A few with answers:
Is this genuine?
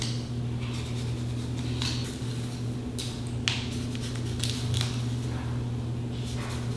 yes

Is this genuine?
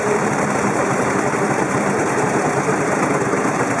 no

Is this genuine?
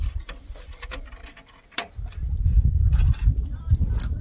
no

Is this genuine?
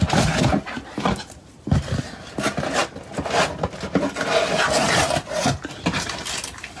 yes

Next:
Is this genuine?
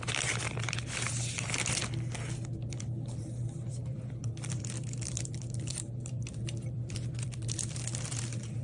no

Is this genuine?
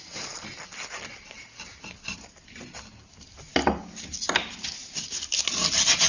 yes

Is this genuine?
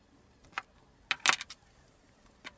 yes